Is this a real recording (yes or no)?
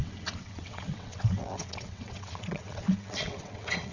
no